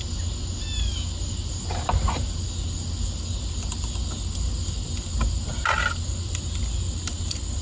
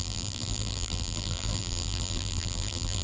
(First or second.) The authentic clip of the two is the first